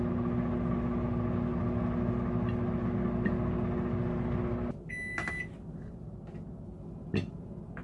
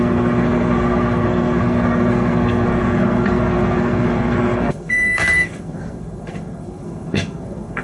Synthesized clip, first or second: second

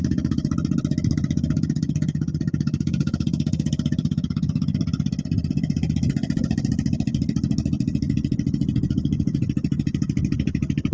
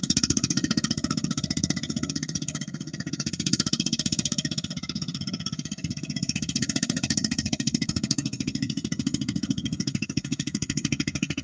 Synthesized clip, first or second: second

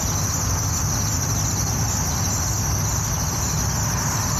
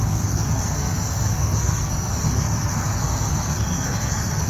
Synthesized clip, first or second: second